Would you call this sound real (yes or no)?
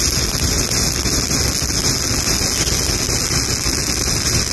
yes